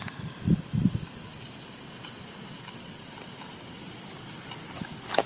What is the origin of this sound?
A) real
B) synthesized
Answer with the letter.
A